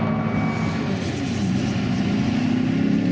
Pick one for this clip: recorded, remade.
recorded